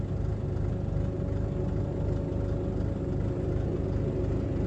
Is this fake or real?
real